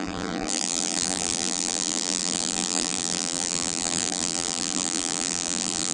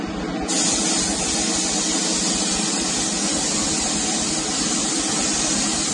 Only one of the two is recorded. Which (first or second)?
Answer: second